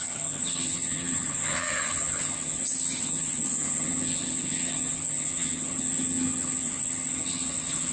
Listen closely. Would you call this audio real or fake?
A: fake